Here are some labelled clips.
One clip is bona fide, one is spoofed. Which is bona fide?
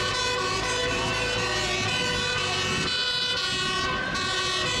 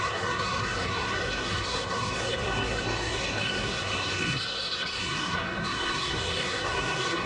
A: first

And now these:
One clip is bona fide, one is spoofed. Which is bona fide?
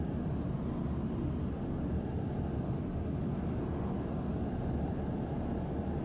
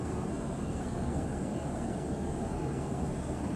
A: first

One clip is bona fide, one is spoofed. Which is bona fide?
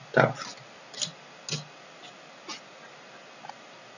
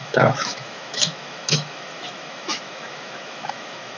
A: first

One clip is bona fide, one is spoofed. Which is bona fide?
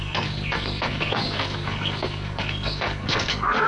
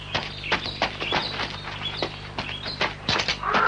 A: second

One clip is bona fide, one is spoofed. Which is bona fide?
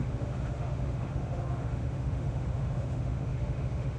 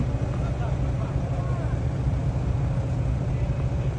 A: second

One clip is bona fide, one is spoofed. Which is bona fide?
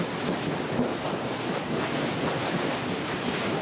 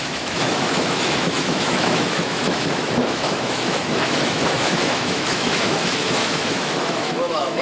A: first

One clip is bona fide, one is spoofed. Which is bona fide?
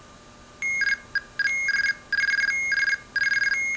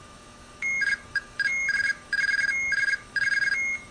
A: first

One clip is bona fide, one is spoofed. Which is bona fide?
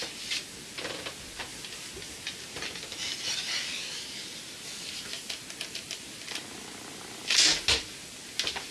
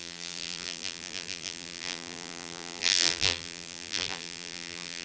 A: first